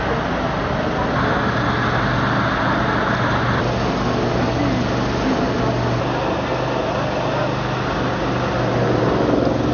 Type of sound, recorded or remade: recorded